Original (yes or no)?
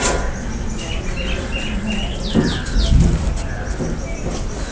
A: yes